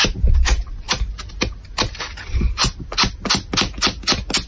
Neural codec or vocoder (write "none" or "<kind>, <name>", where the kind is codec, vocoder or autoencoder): none